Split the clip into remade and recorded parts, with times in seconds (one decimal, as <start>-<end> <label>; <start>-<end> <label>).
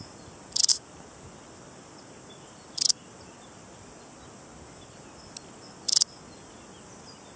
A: 0.0-7.4 recorded